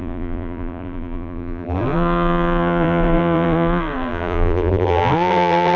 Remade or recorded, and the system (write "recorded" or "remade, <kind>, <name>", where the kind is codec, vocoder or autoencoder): remade, vocoder, BigVGAN v2